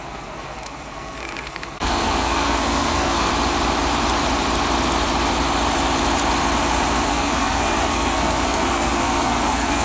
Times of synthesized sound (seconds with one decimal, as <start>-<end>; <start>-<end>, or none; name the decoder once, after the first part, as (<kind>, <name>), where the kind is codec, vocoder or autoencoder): 0.0-3.3 (codec, SNAC); 7.1-9.8